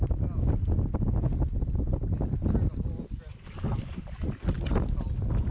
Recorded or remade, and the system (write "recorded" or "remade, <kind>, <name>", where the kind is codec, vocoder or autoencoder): recorded